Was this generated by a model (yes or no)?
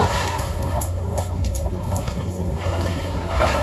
yes